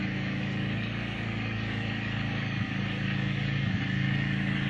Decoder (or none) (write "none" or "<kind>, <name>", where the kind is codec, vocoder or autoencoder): codec, DAC